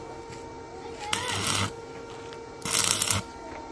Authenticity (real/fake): real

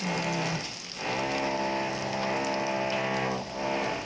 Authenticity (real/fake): real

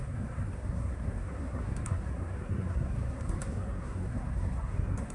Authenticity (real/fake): fake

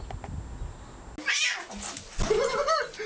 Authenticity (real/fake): real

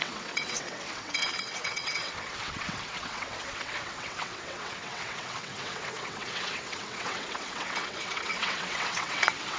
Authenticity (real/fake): fake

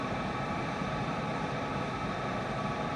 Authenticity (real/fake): fake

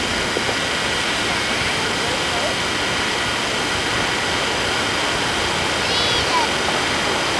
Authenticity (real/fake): real